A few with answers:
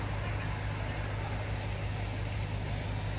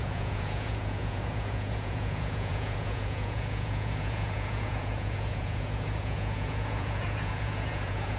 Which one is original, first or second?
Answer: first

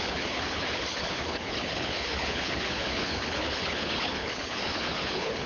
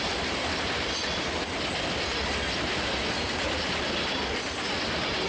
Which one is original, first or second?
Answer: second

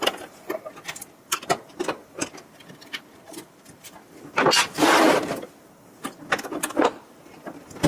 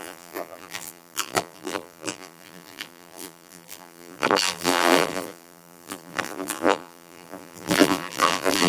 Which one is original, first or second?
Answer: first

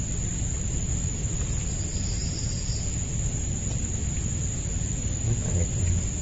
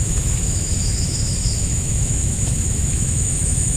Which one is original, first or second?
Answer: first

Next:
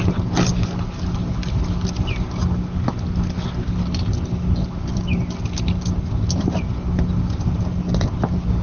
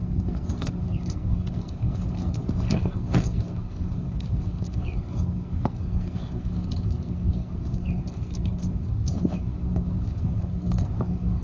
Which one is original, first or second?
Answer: first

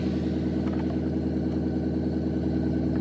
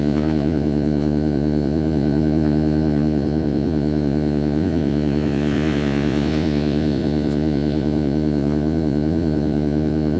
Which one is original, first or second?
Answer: first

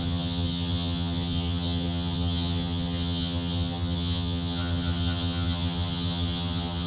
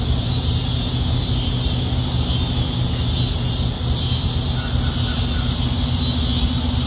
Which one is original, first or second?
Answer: second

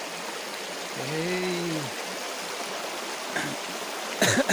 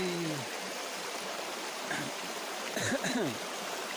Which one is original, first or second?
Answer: first